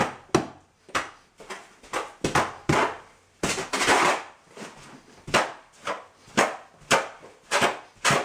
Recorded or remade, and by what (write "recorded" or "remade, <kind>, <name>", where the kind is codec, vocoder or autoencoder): recorded